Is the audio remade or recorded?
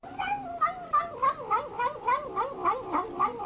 recorded